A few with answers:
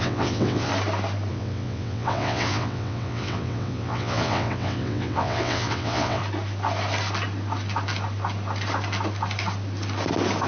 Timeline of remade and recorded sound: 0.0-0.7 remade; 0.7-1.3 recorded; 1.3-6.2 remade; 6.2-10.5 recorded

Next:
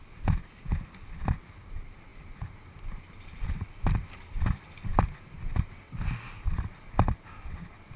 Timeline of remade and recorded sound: 0.0-8.0 recorded

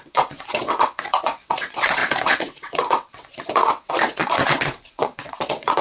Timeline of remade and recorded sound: 0.0-5.8 remade

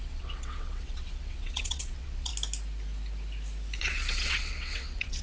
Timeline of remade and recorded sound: 0.0-2.3 remade; 2.3-3.8 recorded; 3.8-5.2 remade

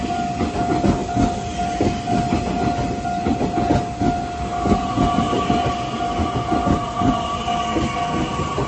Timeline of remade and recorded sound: 0.0-8.7 recorded